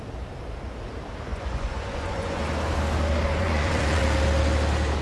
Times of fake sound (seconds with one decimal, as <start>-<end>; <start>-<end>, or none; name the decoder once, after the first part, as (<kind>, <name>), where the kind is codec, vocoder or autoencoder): 1.3-2.4 (vocoder, Vocos); 3.4-4.0